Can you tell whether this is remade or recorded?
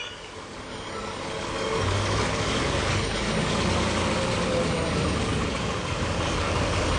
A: remade